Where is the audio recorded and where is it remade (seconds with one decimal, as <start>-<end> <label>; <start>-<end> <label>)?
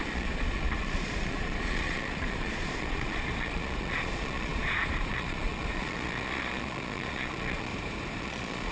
0.0-7.7 remade; 7.7-8.2 recorded; 8.2-8.7 remade